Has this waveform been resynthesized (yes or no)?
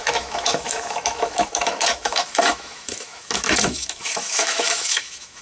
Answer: yes